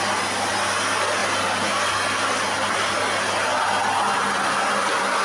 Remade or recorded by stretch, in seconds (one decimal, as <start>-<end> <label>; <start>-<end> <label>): 0.0-5.2 recorded